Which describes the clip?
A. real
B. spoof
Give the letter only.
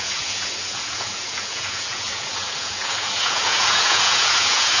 B